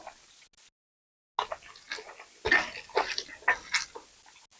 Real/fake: real